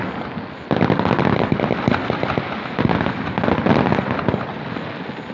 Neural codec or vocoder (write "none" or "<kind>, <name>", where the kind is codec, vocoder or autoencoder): none